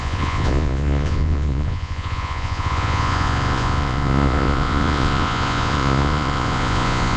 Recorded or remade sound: remade